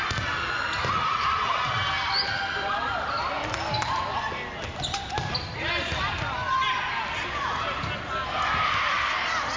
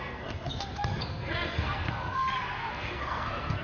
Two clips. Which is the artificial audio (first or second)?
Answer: second